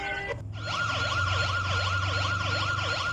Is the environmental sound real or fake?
real